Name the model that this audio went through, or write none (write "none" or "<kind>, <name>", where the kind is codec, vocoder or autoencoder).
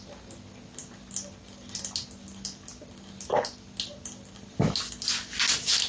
none